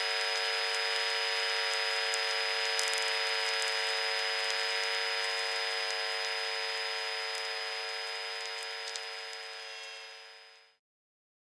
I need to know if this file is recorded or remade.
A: recorded